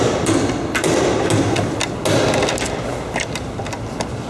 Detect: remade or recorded recorded